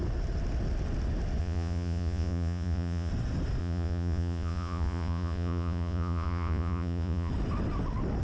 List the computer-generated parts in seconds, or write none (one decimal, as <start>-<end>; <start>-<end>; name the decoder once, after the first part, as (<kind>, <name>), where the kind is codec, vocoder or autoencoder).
1.4-3.1 (vocoder, Vocos); 3.6-7.3